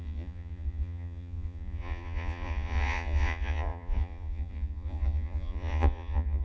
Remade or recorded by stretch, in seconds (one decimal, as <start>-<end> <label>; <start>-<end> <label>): 0.0-6.4 remade

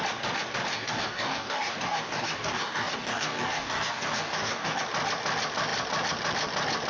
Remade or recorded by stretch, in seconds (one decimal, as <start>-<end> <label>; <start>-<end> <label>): 0.0-0.7 recorded; 0.7-4.8 remade; 4.8-6.9 recorded

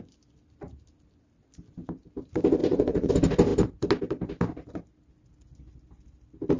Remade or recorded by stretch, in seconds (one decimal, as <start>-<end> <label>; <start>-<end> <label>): 0.0-2.6 recorded; 2.6-3.1 remade; 3.1-6.6 recorded

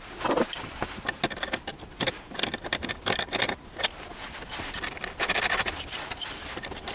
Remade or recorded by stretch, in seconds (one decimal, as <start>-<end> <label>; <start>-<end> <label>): 0.0-1.7 recorded; 1.7-2.6 remade; 2.6-6.9 recorded

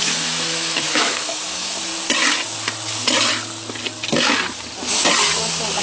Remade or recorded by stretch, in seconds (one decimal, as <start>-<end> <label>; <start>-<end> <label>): 0.0-1.9 remade; 1.9-5.8 recorded